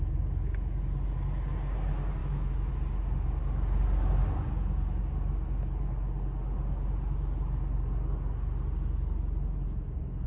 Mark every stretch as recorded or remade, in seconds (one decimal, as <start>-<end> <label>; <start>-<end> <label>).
0.0-2.2 recorded; 2.2-2.7 remade; 2.7-10.3 recorded